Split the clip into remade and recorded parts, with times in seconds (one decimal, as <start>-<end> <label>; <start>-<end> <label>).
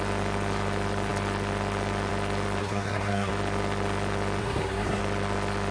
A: 0.0-2.6 recorded; 2.6-3.3 remade; 3.3-4.4 recorded; 4.4-5.0 remade; 5.0-5.7 recorded